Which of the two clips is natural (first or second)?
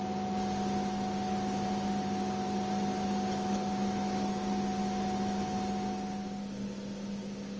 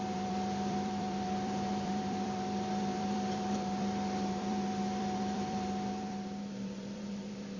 first